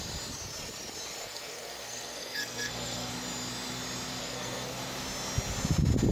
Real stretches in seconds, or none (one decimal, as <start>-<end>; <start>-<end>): 0.0-1.2; 3.1-4.2; 4.8-6.1